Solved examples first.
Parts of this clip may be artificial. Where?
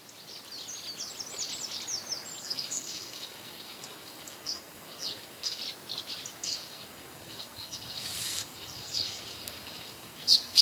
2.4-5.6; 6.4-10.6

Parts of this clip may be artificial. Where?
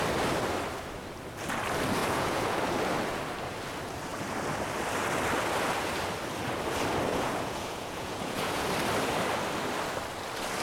2.0-2.6; 7.1-8.7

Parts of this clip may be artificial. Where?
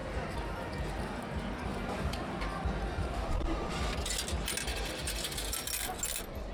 1.7-2.3; 3.0-3.7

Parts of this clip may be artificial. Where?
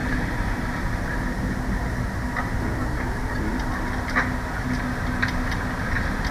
none